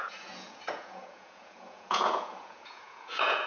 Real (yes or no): no